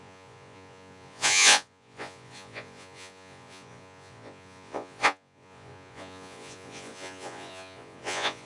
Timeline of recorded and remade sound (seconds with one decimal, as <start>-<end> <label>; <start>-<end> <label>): 0.0-8.5 remade